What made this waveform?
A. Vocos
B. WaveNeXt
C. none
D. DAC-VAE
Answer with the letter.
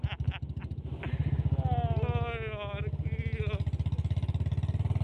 C